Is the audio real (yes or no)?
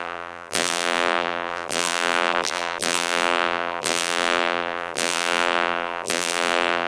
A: no